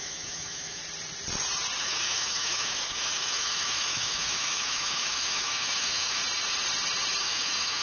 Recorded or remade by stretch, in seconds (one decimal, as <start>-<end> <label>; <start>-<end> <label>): 0.0-0.8 remade; 0.8-1.8 recorded; 1.8-6.2 remade; 6.2-7.2 recorded; 7.2-7.8 remade